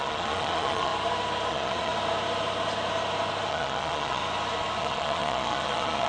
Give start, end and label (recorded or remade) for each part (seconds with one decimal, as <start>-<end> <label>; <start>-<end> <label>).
0.0-0.9 remade; 0.9-1.5 recorded; 1.5-1.9 remade; 1.9-3.5 recorded; 3.5-4.2 remade; 4.2-4.8 recorded; 4.8-6.1 remade